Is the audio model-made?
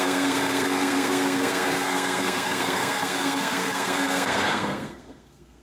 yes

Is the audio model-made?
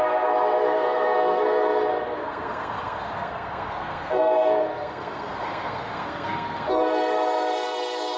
yes